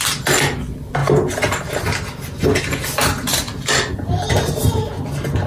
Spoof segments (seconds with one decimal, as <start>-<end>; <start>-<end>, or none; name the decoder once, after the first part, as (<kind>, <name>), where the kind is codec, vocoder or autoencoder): 1.0-1.8 (vocoder, BigVGAN v2); 3.3-4.9